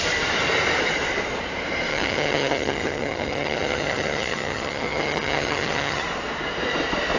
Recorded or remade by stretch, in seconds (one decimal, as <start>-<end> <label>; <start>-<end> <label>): 0.0-1.9 recorded; 1.9-6.0 remade; 6.0-7.2 recorded